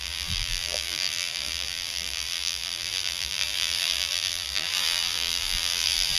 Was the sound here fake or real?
fake